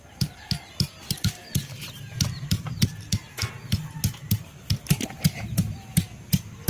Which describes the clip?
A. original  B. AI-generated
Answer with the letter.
A